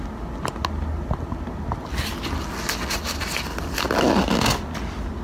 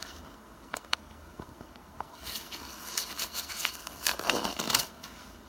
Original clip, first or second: first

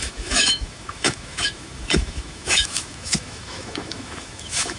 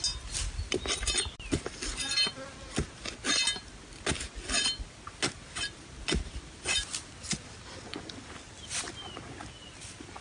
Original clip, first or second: second